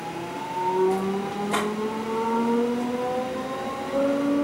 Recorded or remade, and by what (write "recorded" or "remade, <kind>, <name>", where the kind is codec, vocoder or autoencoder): recorded